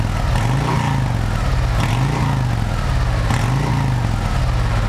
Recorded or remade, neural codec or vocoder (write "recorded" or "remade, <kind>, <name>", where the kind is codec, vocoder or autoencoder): recorded